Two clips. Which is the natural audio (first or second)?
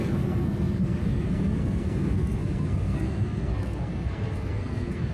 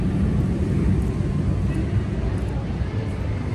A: second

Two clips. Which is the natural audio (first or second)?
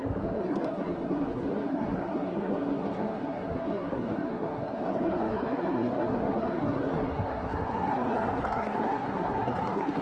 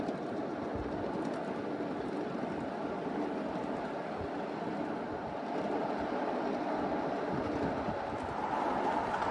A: second